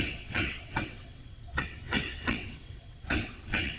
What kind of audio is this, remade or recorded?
remade